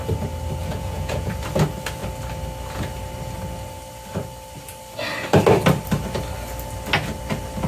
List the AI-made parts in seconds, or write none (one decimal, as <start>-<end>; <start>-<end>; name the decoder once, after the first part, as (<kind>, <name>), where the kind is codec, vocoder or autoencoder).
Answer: 0.6-1.3 (vocoder, Vocos)